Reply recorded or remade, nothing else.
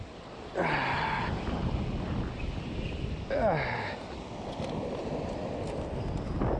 recorded